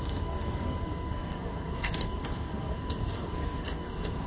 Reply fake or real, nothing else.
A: fake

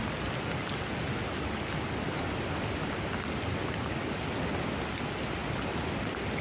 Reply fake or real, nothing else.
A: real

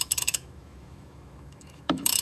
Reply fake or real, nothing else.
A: fake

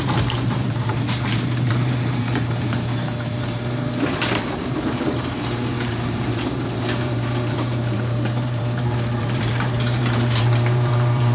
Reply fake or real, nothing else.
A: fake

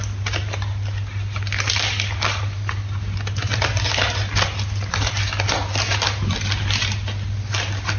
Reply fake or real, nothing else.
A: real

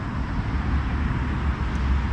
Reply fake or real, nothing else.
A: real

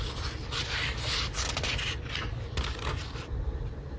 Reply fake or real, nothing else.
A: real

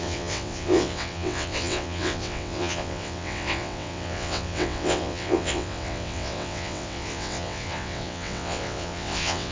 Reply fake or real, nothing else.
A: fake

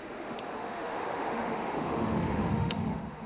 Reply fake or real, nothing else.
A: fake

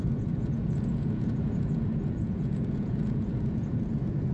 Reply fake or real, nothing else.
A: fake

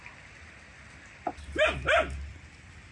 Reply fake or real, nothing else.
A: real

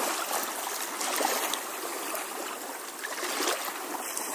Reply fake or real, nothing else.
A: real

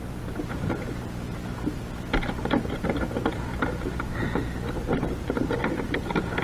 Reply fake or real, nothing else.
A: real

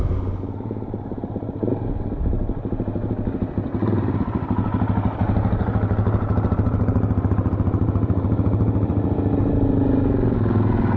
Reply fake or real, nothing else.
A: real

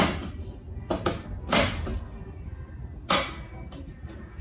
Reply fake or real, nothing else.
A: real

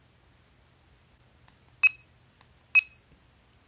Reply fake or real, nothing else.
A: real